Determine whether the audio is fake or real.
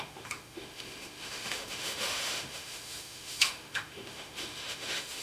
fake